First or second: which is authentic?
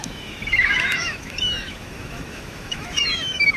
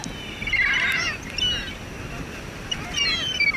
second